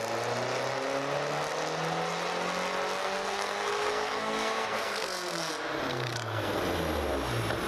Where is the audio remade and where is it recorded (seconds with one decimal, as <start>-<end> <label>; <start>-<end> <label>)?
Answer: 0.0-3.0 recorded; 3.0-5.5 remade; 5.5-5.9 recorded; 5.9-6.6 remade; 6.6-7.7 recorded